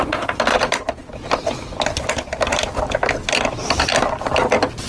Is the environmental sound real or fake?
real